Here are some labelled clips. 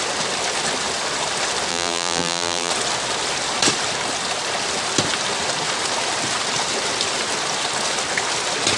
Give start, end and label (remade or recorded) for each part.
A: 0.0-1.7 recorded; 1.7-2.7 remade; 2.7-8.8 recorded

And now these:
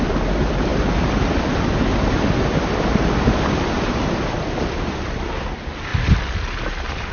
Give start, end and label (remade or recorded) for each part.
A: 0.0-5.9 remade; 5.9-7.1 recorded

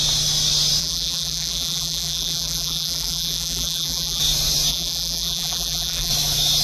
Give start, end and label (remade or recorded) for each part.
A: 0.0-0.8 recorded; 0.8-4.2 remade; 4.2-4.7 recorded; 4.7-6.1 remade; 6.1-6.6 recorded

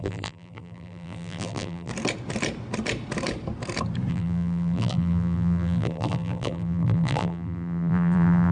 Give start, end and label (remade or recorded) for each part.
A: 0.0-1.9 remade; 1.9-4.1 recorded; 4.1-8.5 remade

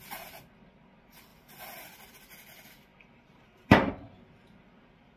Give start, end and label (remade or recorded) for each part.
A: 0.0-2.9 recorded; 2.9-3.9 remade; 3.9-5.2 recorded